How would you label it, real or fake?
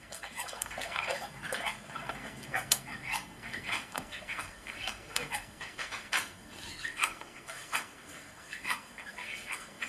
fake